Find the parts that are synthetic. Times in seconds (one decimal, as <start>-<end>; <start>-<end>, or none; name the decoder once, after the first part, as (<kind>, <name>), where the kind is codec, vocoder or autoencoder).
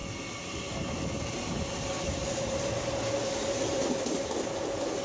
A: none